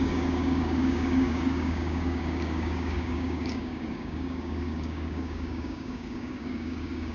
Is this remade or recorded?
remade